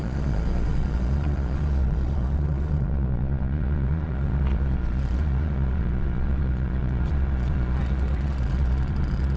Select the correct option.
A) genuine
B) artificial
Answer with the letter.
B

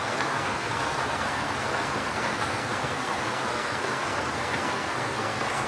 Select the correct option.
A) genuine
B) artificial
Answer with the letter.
B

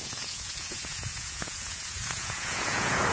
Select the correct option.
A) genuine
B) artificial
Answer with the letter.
B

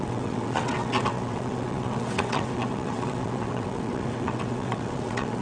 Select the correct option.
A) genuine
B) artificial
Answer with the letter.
B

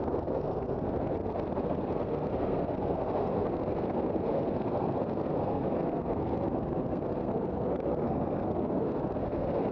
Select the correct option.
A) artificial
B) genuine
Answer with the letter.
A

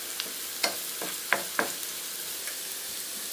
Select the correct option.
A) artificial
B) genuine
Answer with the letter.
B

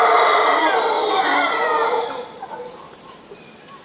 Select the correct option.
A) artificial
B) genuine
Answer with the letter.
B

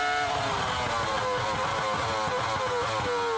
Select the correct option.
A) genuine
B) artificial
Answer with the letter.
A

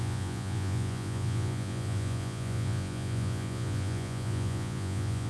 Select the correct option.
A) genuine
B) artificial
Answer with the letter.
B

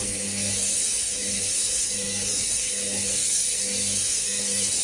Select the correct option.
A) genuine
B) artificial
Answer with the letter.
B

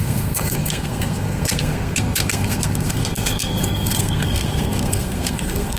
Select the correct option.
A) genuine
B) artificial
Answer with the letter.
B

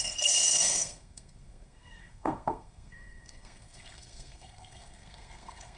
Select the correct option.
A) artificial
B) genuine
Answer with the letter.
A